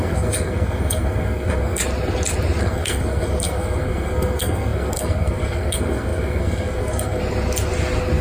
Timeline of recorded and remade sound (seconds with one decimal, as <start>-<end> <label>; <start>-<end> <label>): 0.0-1.8 remade; 1.8-2.6 recorded; 2.6-7.2 remade; 7.2-8.2 recorded